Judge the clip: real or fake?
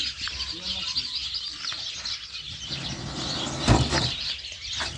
real